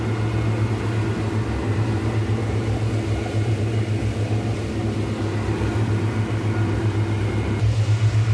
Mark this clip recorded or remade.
recorded